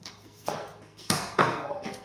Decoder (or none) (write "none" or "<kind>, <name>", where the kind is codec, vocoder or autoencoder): codec, SNAC